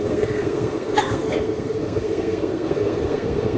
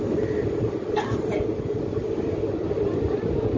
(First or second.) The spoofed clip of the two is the first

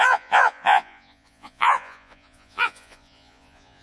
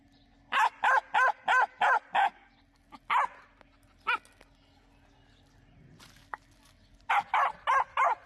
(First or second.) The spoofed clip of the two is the first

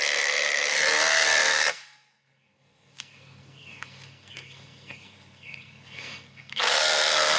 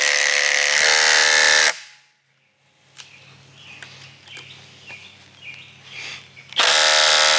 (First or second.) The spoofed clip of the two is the first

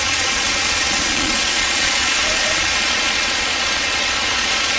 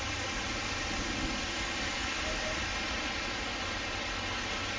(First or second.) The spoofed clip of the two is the first